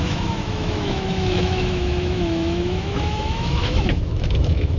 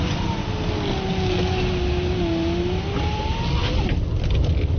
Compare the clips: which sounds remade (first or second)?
first